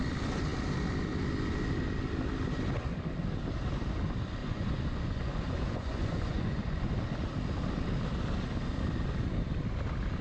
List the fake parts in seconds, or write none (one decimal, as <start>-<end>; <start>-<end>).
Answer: 4.4-6.9